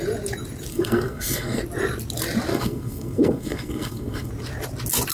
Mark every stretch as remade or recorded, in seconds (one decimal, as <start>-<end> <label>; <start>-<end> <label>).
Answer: 0.0-0.7 recorded; 0.7-1.6 remade; 1.6-2.5 recorded; 2.5-4.3 remade; 4.3-5.1 recorded